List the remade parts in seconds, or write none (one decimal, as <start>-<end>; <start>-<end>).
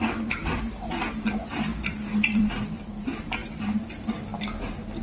0.4-1.0; 1.7-2.4; 4.3-5.0